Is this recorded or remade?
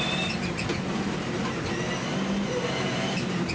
remade